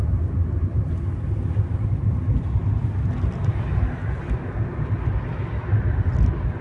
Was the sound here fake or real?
fake